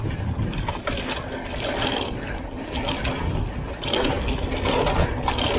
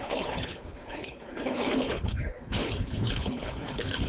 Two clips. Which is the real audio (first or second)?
first